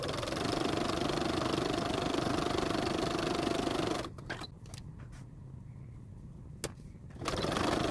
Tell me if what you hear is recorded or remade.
recorded